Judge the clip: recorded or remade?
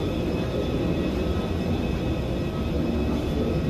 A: recorded